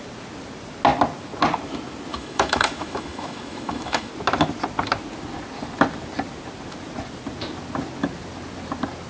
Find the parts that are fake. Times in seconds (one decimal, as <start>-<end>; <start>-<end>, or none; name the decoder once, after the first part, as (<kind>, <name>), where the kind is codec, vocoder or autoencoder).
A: 2.1-4.1 (autoencoder, DAC-VAE)